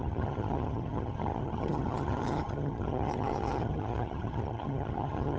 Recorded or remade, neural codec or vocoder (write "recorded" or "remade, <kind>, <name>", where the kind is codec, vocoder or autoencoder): remade, vocoder, HiFi-GAN